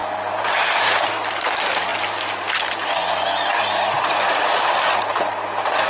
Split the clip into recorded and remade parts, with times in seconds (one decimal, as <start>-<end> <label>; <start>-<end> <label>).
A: 0.0-5.9 recorded

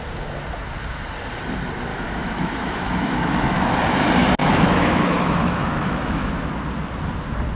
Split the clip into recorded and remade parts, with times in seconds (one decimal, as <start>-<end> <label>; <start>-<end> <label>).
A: 0.0-1.9 recorded; 1.9-3.6 remade; 3.6-4.4 recorded; 4.4-6.3 remade; 6.3-7.6 recorded

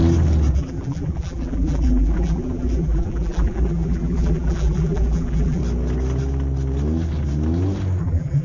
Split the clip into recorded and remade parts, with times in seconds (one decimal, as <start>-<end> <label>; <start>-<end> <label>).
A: 0.0-0.5 recorded; 0.5-5.6 remade; 5.6-8.0 recorded; 8.0-8.4 remade

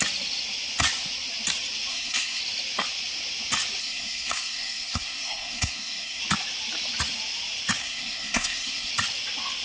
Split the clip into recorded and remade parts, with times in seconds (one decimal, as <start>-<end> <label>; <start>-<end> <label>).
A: 0.0-1.9 recorded; 1.9-2.4 remade; 2.4-3.8 recorded; 3.8-6.2 remade; 6.2-7.8 recorded; 7.8-8.9 remade; 8.9-9.6 recorded

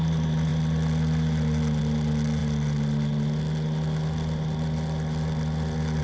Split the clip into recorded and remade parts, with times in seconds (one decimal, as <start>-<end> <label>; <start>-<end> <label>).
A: 0.0-6.0 recorded

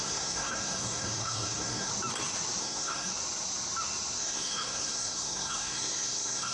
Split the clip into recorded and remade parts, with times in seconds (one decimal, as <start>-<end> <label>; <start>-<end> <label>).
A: 0.0-1.9 remade; 1.9-2.6 recorded; 2.6-3.1 remade; 3.1-4.2 recorded; 4.2-6.5 remade